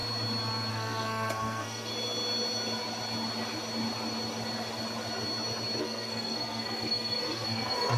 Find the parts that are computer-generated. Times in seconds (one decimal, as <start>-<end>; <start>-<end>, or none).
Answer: 0.7-1.9; 5.8-8.0